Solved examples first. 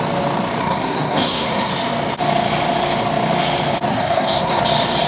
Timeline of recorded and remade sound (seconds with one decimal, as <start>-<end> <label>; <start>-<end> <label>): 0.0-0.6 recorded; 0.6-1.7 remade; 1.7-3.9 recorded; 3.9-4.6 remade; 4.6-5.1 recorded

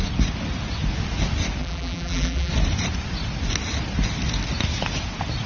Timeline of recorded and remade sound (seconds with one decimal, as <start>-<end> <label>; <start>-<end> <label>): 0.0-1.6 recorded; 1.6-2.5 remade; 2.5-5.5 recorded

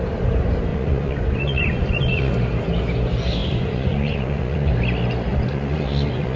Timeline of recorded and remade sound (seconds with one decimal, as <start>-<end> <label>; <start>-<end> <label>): 0.0-0.7 recorded; 0.7-2.3 remade; 2.3-3.4 recorded; 3.4-4.7 remade; 4.7-5.3 recorded; 5.3-6.4 remade

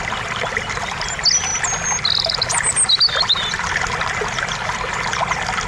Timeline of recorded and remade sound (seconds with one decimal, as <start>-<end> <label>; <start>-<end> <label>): 0.0-5.7 recorded

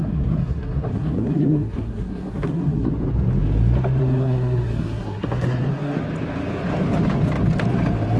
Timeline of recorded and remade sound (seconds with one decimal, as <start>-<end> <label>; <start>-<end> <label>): 0.0-2.9 remade; 2.9-4.0 recorded; 4.0-6.0 remade; 6.0-8.2 recorded

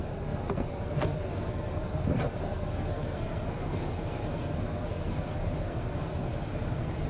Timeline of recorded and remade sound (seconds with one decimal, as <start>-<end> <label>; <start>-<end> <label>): 0.0-7.1 remade

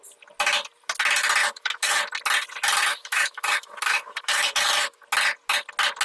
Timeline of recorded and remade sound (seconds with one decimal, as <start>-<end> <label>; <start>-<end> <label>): 0.0-1.4 recorded; 1.4-2.0 remade; 2.0-2.9 recorded; 2.9-5.0 remade; 5.0-6.0 recorded